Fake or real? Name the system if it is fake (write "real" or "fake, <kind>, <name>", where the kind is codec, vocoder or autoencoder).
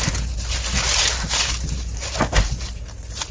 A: real